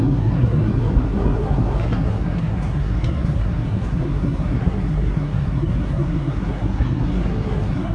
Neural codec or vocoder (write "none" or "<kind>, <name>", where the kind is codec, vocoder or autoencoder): codec, SNAC